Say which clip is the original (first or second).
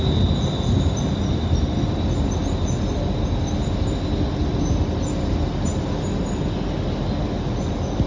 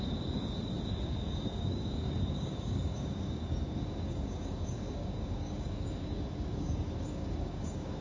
first